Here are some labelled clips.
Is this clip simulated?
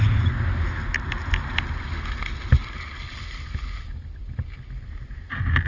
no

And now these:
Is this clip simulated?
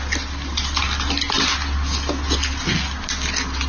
no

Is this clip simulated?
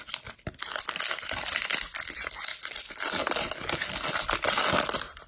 no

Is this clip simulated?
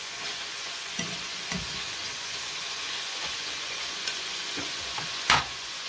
yes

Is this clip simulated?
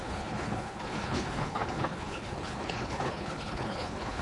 yes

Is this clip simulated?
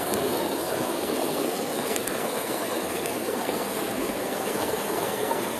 yes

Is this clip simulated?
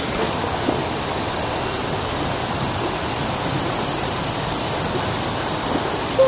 no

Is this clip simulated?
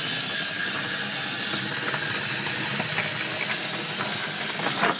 no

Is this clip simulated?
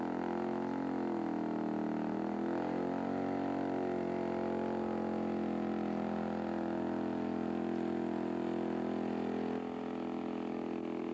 no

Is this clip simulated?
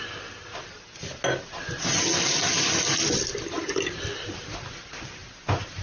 no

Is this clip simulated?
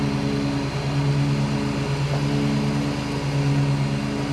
no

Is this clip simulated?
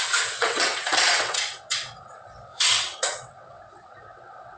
yes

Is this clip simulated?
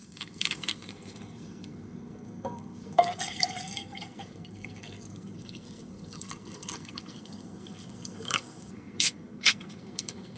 yes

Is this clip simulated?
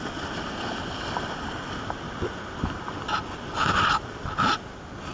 no